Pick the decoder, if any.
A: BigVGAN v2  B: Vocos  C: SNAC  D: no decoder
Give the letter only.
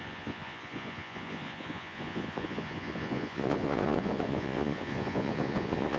B